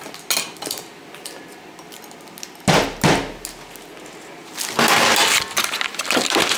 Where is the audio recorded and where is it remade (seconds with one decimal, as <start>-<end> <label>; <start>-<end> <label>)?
0.0-6.6 recorded